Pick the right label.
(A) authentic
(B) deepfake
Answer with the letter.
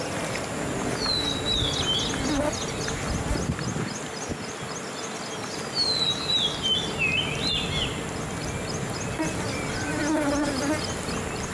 A